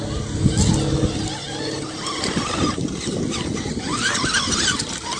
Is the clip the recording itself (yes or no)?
yes